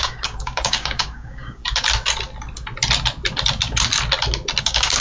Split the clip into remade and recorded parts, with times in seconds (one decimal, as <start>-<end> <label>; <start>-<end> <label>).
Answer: 0.0-1.6 remade; 1.6-4.6 recorded; 4.6-5.0 remade